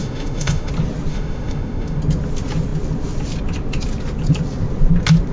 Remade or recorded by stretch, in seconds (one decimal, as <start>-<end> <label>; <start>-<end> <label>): 0.0-0.7 remade; 0.7-1.1 recorded; 1.1-2.0 remade; 2.0-5.3 recorded